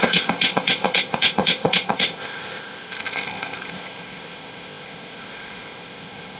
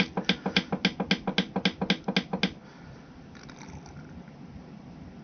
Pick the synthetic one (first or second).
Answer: first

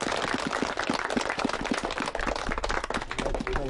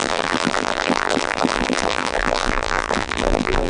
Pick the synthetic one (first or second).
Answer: second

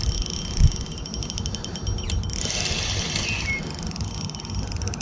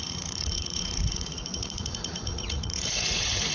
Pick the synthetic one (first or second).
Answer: second